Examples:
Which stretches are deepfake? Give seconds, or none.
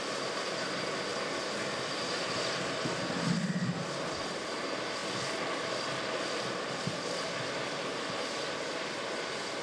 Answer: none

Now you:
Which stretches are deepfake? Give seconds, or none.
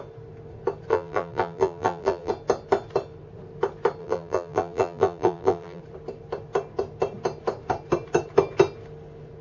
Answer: 0.9-2.3 (vocoder, BigVGAN v2); 4.0-5.8